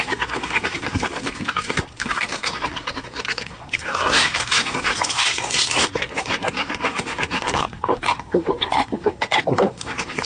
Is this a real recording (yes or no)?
no